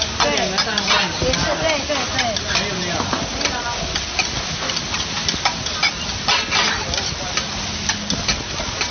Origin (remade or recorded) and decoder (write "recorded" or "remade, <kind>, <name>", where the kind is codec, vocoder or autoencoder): recorded